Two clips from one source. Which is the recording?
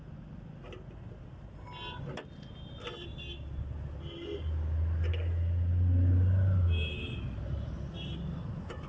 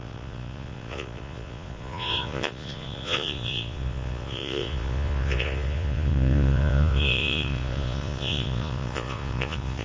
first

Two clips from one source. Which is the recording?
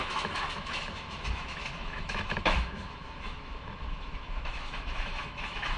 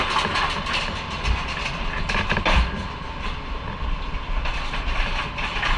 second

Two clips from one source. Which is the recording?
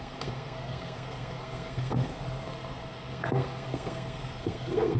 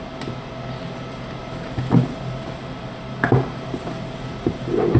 second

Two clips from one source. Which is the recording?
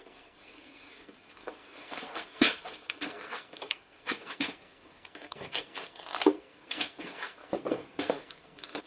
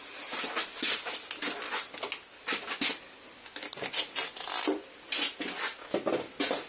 second